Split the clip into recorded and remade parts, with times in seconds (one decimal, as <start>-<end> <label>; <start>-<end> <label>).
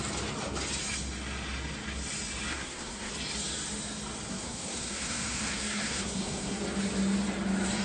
0.0-2.5 recorded; 2.5-3.1 remade; 3.1-4.3 recorded; 4.3-6.6 remade; 6.6-7.8 recorded